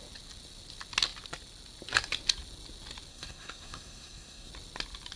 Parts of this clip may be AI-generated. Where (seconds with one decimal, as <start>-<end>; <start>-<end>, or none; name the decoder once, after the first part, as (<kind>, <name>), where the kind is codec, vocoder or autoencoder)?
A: 3.1-4.5 (codec, SNAC)